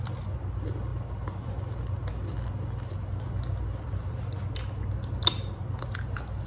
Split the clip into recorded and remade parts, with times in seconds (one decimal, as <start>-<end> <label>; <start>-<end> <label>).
0.0-6.5 recorded